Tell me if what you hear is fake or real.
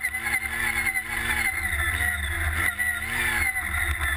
real